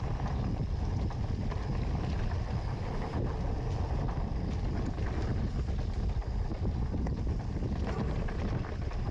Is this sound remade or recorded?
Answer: remade